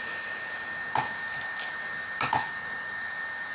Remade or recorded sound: recorded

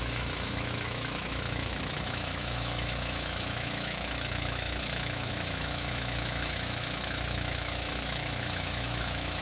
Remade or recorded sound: remade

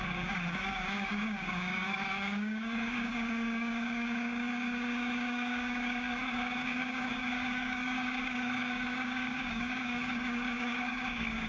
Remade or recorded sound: remade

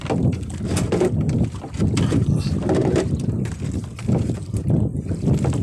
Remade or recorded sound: recorded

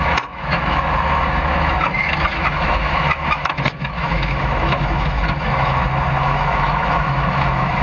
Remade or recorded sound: remade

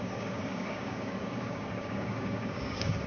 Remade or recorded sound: remade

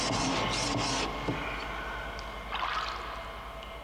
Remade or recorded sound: recorded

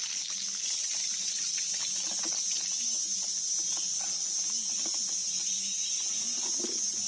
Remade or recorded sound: recorded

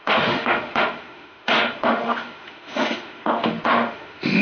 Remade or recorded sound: remade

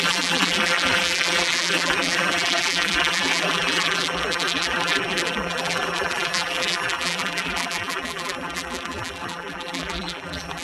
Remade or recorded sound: remade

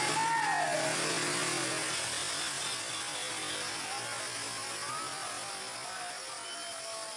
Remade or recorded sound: recorded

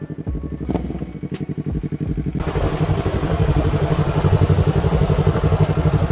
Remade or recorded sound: recorded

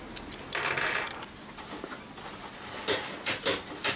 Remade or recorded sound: recorded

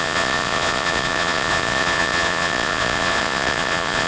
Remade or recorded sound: remade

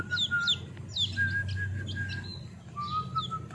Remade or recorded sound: recorded